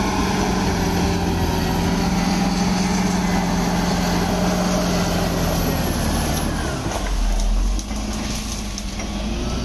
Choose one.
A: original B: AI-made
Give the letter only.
A